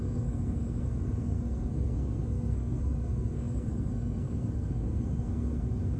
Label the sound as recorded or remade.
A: remade